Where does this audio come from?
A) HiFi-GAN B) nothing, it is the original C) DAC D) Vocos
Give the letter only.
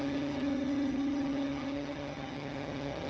A